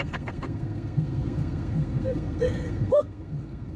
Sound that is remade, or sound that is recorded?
remade